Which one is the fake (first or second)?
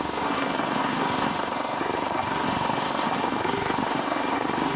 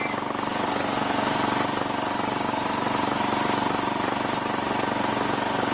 first